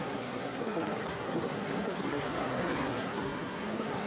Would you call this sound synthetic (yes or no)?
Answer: yes